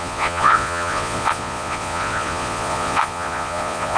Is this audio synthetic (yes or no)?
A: yes